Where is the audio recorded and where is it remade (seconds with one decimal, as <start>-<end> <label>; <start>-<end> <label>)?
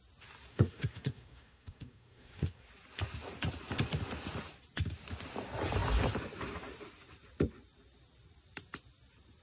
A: 0.0-0.5 recorded; 0.5-2.7 remade; 2.7-9.4 recorded